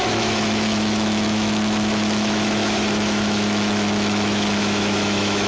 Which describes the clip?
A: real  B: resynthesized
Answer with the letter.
B